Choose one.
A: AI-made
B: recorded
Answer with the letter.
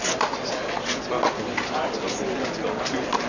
B